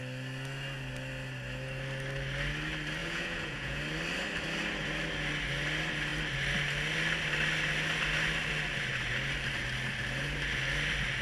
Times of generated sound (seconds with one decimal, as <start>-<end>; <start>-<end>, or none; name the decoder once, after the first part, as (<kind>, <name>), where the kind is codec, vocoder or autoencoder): 3.0-3.8 (vocoder, Vocos)